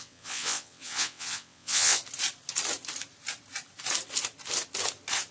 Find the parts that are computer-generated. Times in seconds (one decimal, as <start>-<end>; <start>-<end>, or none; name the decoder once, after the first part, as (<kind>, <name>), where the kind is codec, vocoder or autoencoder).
0.0-2.0 (vocoder, WaveNeXt)